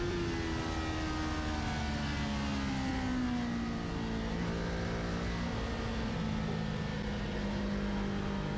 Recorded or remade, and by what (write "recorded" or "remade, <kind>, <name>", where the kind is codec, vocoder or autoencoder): recorded